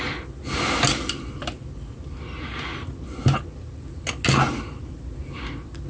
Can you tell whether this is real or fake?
real